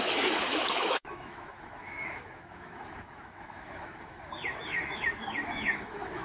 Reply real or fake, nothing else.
fake